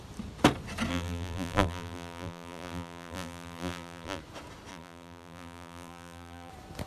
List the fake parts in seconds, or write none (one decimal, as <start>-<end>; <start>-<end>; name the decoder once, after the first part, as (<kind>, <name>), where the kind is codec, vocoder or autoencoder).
0.9-4.2 (vocoder, BigVGAN v2); 4.7-6.5